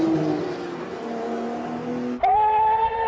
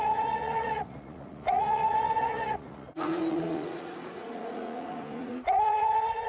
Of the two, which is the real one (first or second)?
first